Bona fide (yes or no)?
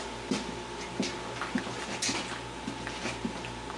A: yes